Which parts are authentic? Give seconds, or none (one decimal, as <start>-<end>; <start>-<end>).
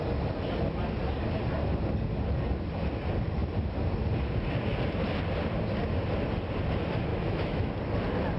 0.0-7.1; 7.7-8.4